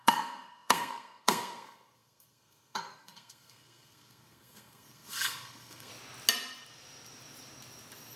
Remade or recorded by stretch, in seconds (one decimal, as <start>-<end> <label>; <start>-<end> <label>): 0.0-5.9 remade; 5.9-8.2 recorded